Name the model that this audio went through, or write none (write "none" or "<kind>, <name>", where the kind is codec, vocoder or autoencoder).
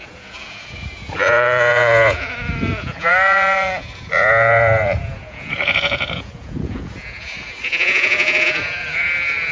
vocoder, Vocos